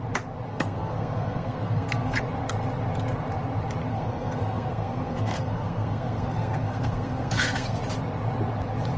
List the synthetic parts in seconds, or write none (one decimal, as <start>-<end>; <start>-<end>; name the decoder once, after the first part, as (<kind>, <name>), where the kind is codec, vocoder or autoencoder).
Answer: 0.5-2.2 (codec, SNAC); 3.9-7.8